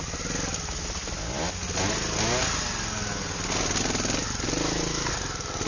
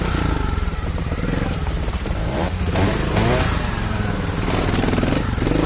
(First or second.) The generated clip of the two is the second